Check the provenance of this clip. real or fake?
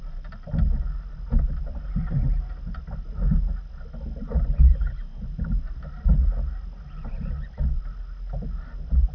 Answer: real